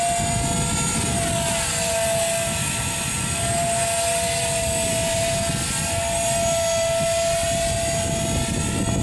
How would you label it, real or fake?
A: real